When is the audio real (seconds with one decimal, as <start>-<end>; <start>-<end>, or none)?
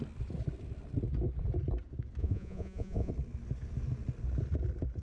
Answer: 0.0-2.2; 3.1-5.0